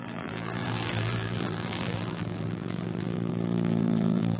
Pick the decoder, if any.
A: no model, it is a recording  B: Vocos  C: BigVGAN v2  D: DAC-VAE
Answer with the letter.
C